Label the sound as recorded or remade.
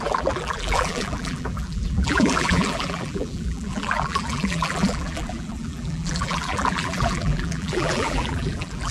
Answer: remade